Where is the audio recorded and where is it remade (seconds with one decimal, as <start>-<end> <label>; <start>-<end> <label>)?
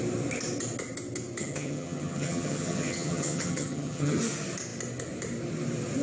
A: 0.0-1.4 recorded; 1.4-4.2 remade; 4.2-6.0 recorded